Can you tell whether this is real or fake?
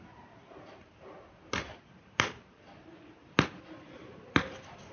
real